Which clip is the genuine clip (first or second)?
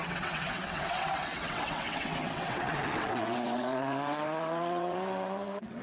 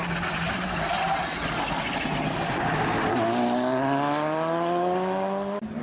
second